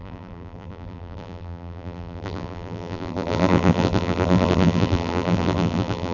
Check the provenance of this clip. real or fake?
fake